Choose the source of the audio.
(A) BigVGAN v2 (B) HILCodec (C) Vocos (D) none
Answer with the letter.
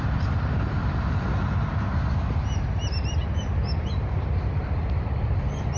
A